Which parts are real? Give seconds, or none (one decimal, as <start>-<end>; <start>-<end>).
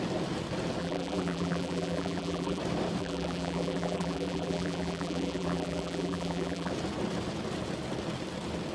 0.0-0.8; 2.6-3.0; 6.7-8.7